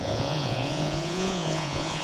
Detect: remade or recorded remade